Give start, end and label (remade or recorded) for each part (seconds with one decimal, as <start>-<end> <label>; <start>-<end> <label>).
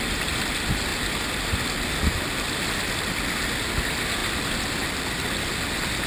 0.0-6.1 recorded